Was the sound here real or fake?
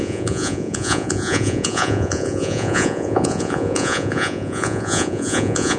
fake